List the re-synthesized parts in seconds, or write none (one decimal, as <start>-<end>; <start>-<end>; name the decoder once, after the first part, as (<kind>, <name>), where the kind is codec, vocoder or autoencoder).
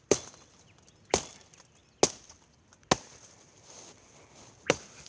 none